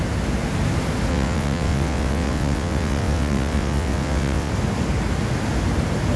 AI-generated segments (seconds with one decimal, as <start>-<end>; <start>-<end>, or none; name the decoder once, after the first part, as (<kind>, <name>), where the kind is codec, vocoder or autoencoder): 1.1-4.5 (vocoder, WaveNeXt)

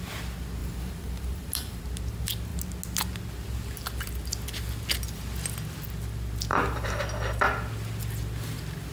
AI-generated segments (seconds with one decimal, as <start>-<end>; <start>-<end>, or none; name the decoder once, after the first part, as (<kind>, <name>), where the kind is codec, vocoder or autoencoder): 0.6-1.8 (vocoder, BigVGAN v2); 6.5-7.0

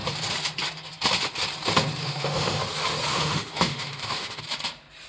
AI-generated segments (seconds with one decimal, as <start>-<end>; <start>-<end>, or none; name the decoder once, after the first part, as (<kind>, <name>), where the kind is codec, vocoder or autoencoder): 2.0-2.6 (autoencoder, DAC-VAE); 3.1-4.4

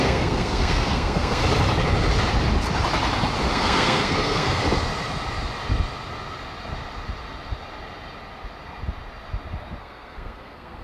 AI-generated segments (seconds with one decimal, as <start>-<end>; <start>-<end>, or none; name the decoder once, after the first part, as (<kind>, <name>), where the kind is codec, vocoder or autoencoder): 0.0-1.4 (codec, SNAC); 3.5-4.6; 9.8-10.8

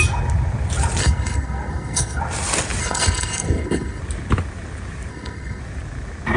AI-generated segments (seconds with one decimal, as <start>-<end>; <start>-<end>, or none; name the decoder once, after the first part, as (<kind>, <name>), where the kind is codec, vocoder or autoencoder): 1.0-2.2 (codec, SNAC); 2.8-4.0; 5.1-5.6

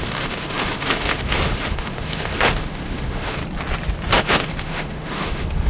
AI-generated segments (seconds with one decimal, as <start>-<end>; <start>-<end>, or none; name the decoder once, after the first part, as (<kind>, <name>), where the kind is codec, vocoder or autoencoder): 0.0-3.4 (autoencoder, DAC-VAE); 4.2-5.7